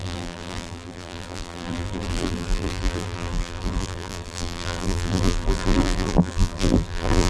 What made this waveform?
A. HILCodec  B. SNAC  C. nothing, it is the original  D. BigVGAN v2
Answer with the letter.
D